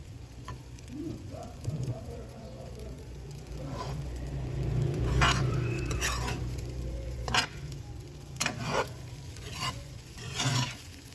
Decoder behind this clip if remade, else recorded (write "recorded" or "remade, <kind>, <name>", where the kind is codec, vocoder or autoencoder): remade, vocoder, Vocos